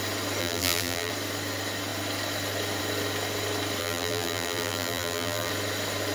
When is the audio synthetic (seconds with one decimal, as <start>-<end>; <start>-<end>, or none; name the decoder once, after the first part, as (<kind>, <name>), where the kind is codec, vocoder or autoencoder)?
0.4-1.1 (vocoder, BigVGAN v2); 3.8-5.5